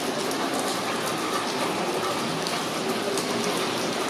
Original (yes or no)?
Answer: yes